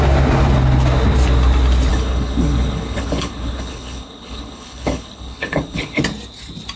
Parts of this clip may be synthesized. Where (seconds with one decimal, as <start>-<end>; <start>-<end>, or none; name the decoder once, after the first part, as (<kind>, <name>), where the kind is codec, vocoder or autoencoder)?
1.9-6.0 (codec, HILCodec)